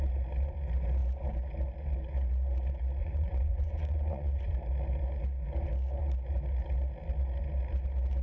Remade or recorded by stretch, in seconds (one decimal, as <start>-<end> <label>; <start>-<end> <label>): 0.0-3.0 recorded; 3.0-4.5 remade; 4.5-8.2 recorded